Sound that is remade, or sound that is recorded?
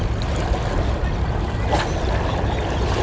recorded